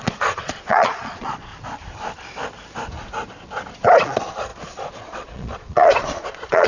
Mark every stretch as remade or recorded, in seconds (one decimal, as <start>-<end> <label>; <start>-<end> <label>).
0.0-1.5 remade; 1.5-4.0 recorded; 4.0-6.7 remade

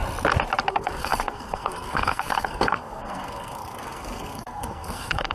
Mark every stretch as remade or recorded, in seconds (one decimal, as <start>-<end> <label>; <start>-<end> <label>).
0.0-0.7 recorded; 0.7-5.3 remade

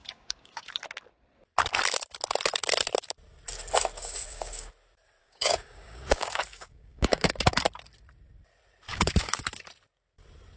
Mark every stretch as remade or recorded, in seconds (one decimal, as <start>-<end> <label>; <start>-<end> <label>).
0.0-0.7 remade; 0.7-3.9 recorded; 3.9-4.7 remade; 4.7-5.2 recorded; 5.2-7.6 remade; 7.6-8.9 recorded; 8.9-9.4 remade; 9.4-10.6 recorded

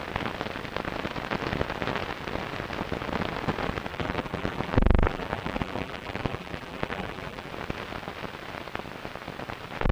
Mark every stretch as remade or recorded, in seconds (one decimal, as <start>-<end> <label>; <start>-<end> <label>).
0.0-3.9 recorded; 3.9-7.5 remade; 7.5-9.9 recorded

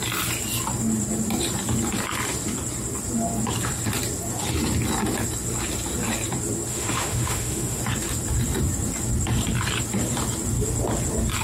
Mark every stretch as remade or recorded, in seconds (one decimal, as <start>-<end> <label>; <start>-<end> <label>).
0.0-6.7 recorded; 6.7-7.8 remade; 7.8-11.4 recorded

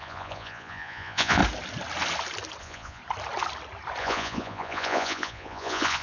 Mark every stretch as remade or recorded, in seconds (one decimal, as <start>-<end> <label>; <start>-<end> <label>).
0.0-1.4 remade; 1.4-2.6 recorded; 2.6-3.0 remade; 3.0-4.0 recorded; 4.0-6.0 remade

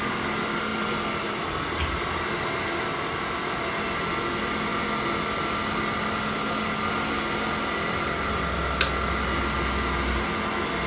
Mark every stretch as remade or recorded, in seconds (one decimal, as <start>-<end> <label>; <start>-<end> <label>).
0.0-10.9 recorded